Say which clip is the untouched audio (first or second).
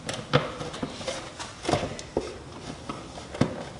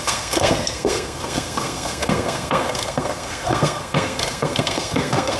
first